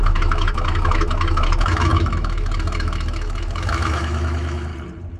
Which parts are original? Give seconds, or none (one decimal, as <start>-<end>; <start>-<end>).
4.7-5.2